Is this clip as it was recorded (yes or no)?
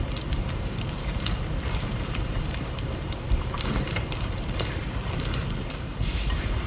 no